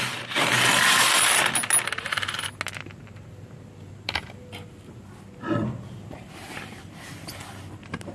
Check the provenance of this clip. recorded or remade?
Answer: recorded